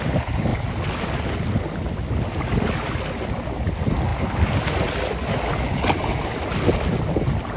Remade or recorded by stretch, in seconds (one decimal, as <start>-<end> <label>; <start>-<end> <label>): 0.0-7.6 recorded